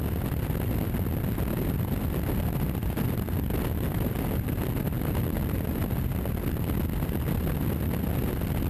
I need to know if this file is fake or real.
real